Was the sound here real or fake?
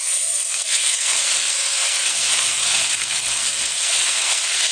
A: fake